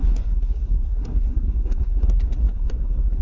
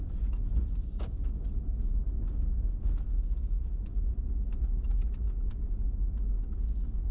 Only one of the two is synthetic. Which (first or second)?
first